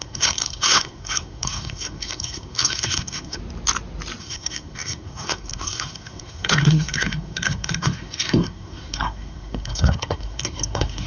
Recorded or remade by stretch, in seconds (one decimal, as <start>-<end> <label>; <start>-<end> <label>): 0.0-3.4 remade; 3.4-4.2 recorded; 4.2-11.1 remade